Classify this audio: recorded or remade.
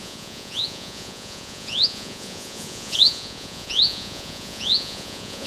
remade